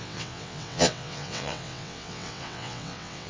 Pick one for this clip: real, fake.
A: fake